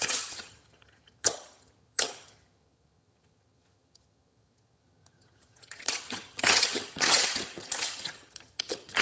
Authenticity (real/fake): fake